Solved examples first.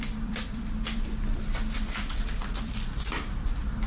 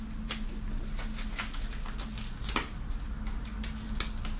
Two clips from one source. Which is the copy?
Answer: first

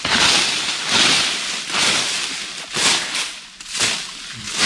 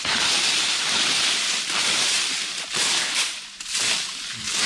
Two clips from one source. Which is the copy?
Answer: second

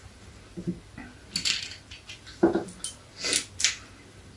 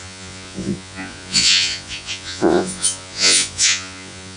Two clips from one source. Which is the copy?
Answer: second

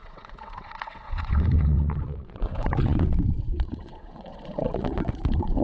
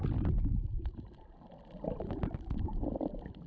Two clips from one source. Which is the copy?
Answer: first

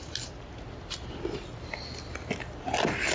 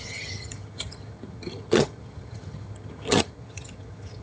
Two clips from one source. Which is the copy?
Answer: second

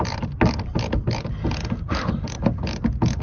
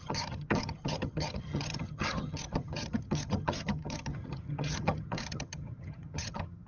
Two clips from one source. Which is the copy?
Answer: second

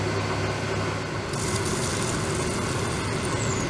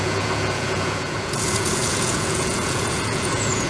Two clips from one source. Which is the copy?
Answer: second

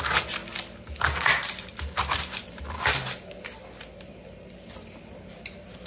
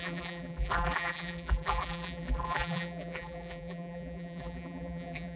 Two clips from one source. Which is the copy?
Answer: second